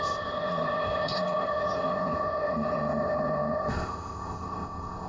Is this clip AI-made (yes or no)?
yes